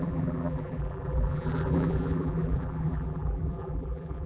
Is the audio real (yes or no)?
no